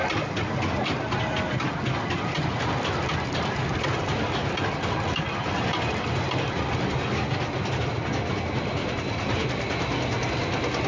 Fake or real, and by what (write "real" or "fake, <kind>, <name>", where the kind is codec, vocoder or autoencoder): real